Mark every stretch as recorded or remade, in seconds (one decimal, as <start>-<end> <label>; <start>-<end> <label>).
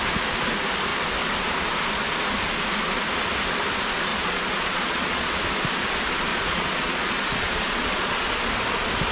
0.0-4.1 recorded; 4.1-5.3 remade; 5.3-6.3 recorded; 6.3-8.3 remade; 8.3-9.1 recorded